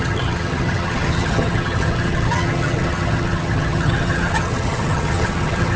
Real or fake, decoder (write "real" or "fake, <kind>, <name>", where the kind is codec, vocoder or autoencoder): fake, vocoder, HiFi-GAN